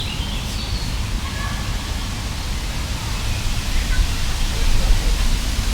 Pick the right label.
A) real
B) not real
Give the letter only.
A